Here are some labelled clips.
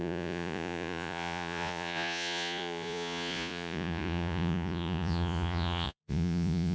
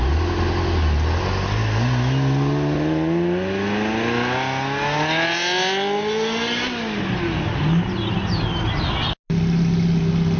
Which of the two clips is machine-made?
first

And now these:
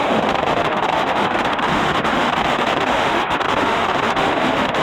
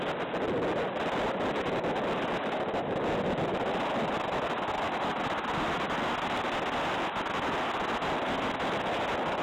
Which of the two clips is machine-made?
first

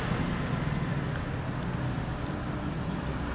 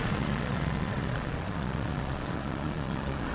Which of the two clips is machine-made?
second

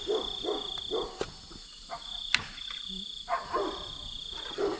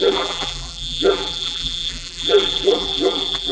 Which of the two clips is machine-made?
second